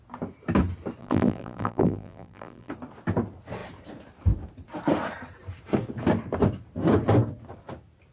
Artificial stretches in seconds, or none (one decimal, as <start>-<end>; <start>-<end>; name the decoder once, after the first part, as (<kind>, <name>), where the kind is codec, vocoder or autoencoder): 1.0-2.7 (vocoder, BigVGAN v2)